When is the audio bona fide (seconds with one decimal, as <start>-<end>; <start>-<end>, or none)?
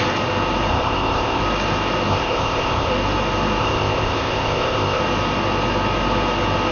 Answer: 0.0-0.7; 1.4-2.1; 2.9-3.6; 5.0-6.7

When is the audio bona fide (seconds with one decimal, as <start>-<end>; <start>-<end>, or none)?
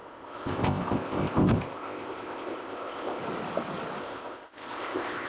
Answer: 3.2-4.0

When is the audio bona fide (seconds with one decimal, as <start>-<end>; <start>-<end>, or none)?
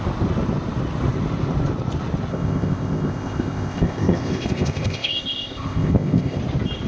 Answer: 0.0-2.3; 6.4-6.9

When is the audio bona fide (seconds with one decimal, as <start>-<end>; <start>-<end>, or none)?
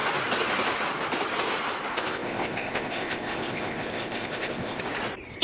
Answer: 0.0-1.9; 4.8-5.4